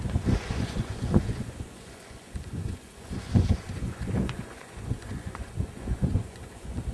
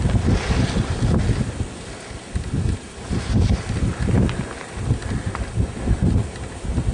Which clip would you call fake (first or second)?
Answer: first